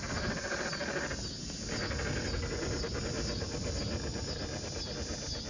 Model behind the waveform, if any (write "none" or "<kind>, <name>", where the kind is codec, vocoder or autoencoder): none